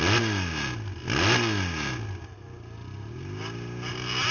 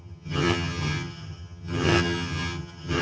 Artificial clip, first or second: second